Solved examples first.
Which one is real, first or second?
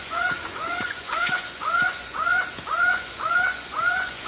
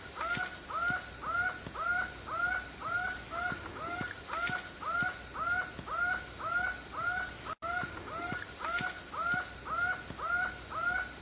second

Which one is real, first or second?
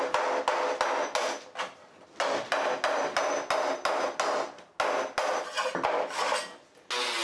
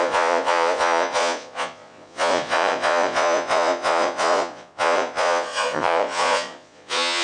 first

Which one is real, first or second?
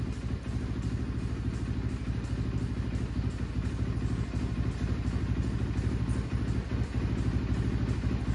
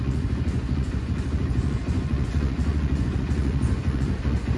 first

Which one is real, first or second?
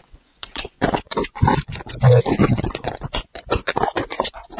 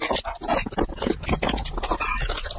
second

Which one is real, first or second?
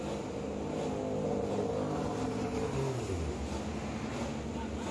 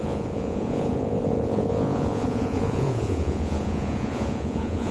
first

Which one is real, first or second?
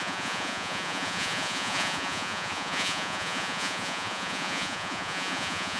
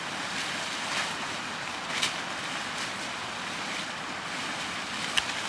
second